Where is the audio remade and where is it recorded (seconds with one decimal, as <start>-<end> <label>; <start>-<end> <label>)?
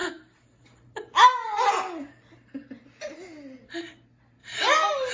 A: 0.0-5.1 recorded